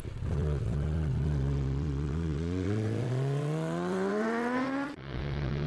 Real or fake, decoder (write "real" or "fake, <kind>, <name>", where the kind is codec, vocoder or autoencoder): fake, vocoder, WaveNeXt